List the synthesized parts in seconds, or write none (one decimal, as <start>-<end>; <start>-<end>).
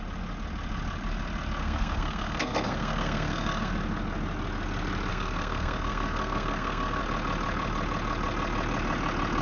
1.6-3.7; 5.1-7.0